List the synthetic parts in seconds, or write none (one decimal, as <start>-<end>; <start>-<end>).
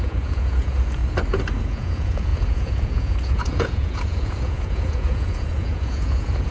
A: 0.0-1.0; 1.6-6.5